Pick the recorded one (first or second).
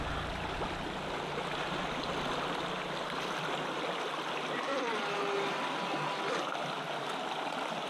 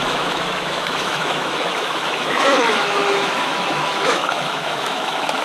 first